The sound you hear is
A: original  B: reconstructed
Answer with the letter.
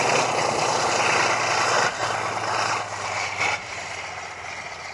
A